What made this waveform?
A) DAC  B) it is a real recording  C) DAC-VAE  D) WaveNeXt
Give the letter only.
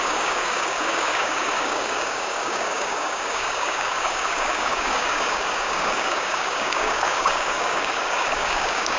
A